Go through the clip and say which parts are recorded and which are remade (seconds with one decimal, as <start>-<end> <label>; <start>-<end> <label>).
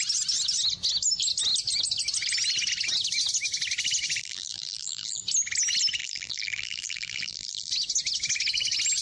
0.0-4.2 recorded; 4.2-5.2 remade; 5.2-6.0 recorded; 6.0-7.7 remade; 7.7-9.0 recorded